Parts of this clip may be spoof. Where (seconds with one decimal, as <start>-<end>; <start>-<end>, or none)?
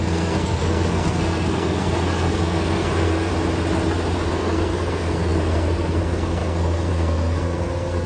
0.0-3.3; 4.3-8.1